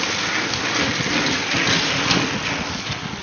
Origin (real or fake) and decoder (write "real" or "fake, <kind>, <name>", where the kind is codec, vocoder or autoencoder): real